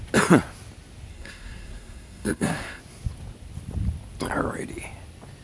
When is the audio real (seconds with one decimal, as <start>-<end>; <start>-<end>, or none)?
0.0-1.1; 2.8-5.4